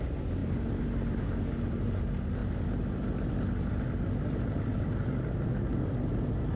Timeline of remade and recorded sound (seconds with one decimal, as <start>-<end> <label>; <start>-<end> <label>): 0.0-0.4 recorded; 0.4-1.2 remade; 1.2-2.4 recorded; 2.4-6.1 remade; 6.1-6.6 recorded